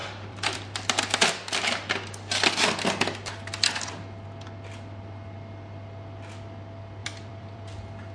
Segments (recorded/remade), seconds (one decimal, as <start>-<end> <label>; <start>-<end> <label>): 0.0-1.0 remade; 1.0-7.0 recorded; 7.0-7.6 remade; 7.6-8.1 recorded